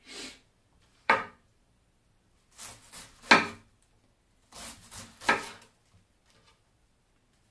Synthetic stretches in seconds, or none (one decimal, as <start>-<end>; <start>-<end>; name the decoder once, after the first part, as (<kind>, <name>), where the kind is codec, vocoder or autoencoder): 0.9-1.6 (vocoder, BigVGAN v2)